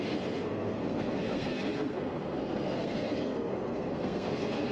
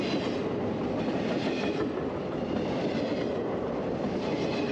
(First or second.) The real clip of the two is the second